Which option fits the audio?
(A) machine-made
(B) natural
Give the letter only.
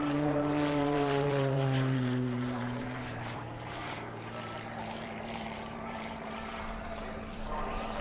A